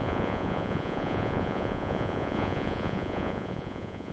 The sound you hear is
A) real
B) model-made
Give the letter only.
B